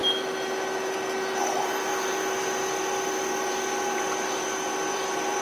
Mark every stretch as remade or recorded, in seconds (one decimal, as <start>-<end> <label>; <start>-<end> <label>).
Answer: 0.0-1.4 recorded; 1.4-1.8 remade; 1.8-4.9 recorded; 4.9-5.4 remade